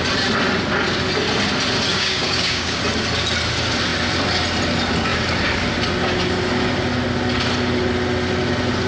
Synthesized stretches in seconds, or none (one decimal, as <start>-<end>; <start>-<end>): 1.9-2.8